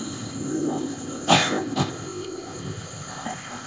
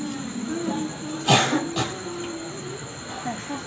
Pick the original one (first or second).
second